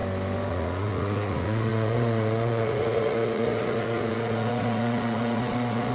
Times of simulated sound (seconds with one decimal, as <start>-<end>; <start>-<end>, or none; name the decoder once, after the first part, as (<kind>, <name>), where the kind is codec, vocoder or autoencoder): 0.5-5.9 (vocoder, Vocos)